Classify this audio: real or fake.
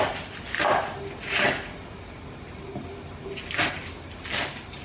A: real